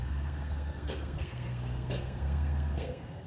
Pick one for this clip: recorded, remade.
remade